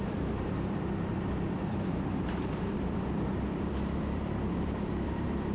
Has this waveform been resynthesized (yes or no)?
yes